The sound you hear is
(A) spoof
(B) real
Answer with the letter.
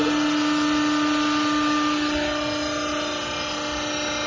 B